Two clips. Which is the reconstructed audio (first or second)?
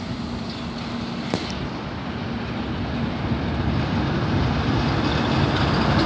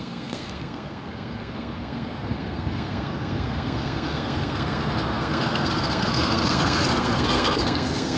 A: second